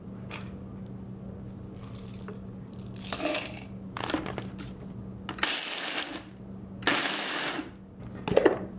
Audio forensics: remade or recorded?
recorded